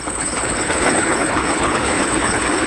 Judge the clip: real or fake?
fake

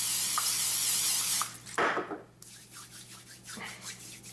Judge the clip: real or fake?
real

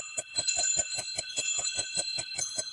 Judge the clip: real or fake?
fake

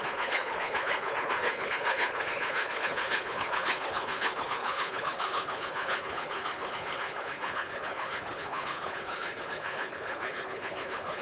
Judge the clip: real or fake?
fake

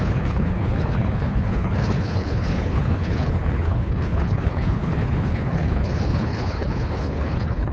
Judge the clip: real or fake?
fake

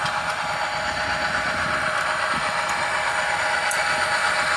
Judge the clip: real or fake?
real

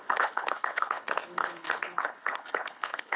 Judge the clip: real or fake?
fake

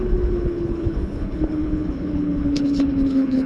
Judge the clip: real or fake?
fake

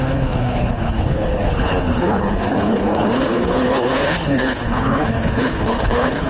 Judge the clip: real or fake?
fake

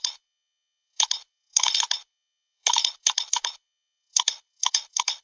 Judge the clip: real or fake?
fake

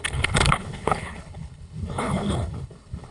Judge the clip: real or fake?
fake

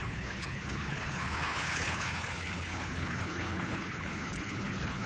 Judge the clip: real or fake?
fake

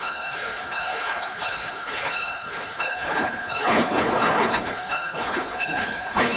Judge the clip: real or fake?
fake